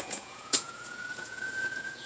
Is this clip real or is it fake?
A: fake